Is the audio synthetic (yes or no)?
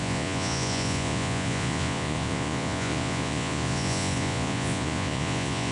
yes